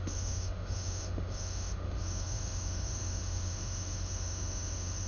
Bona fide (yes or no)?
no